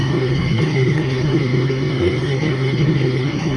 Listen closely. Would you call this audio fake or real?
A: fake